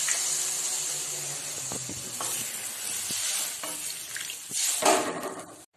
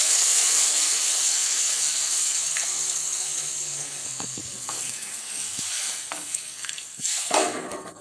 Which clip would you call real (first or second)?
first